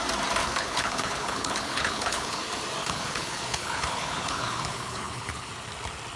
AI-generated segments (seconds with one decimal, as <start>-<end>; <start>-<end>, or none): 0.4-2.4; 2.8-5.5